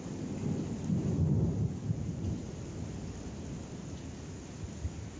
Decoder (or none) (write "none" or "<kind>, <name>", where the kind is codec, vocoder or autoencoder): none